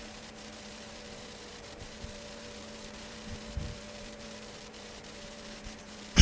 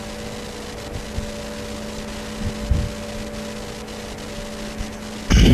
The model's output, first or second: first